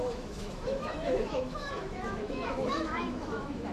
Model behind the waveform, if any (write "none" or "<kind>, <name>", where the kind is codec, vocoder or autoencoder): autoencoder, DAC-VAE